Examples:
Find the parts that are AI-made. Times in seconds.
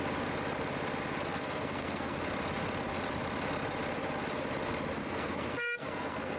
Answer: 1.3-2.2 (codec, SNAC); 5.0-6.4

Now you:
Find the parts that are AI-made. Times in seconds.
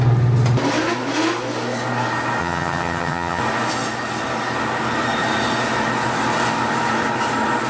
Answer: 2.4-3.4 (vocoder, HiFi-GAN)